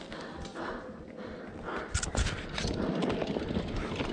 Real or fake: real